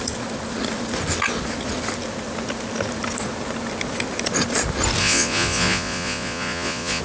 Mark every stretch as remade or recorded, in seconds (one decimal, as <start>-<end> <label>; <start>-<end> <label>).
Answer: 0.0-5.0 recorded; 5.0-7.0 remade